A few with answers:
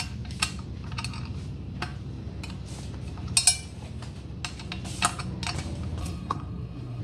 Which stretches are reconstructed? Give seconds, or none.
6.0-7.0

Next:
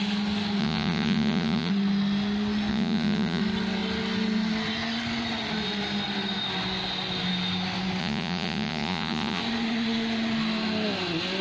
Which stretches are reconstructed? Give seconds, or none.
0.6-1.7; 2.7-3.4; 8.0-9.4

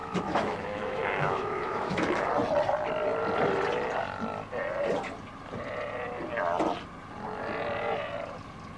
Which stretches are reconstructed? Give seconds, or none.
0.0-2.2